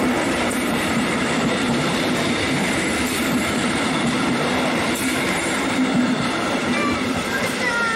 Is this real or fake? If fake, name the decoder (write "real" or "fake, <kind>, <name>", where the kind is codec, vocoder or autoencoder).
fake, vocoder, BigVGAN v2